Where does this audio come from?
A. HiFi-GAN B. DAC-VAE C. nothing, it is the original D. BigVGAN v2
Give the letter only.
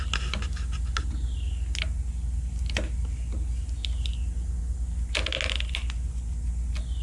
C